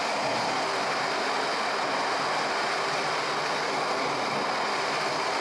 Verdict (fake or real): real